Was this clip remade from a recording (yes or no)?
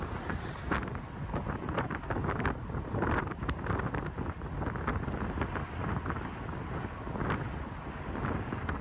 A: no